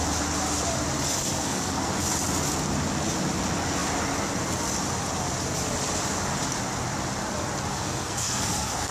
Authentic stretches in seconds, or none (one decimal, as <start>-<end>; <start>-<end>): 0.0-1.1; 1.9-7.7